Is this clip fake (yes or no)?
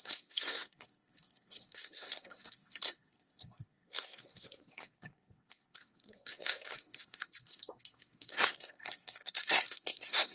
yes